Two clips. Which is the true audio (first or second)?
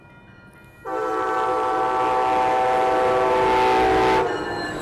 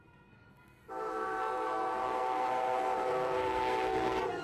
first